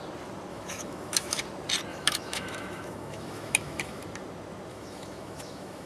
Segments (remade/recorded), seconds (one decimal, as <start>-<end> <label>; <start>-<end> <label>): 0.0-0.5 recorded; 0.5-1.4 remade; 1.4-1.9 recorded; 1.9-4.0 remade; 4.0-4.7 recorded; 4.7-5.9 remade